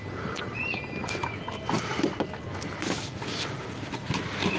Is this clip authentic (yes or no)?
yes